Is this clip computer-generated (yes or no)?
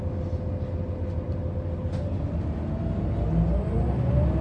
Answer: no